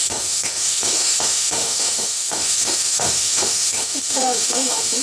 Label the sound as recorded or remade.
remade